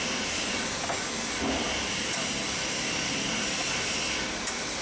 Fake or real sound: real